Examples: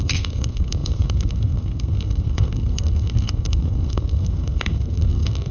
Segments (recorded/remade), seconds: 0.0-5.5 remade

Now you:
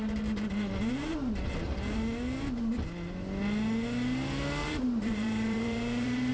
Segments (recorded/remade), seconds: 0.0-4.6 recorded; 4.6-6.3 remade

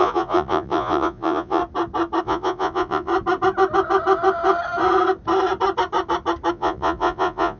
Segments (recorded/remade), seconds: 0.0-1.6 remade; 1.6-2.2 recorded; 2.2-3.1 remade; 3.1-6.5 recorded; 6.5-7.6 remade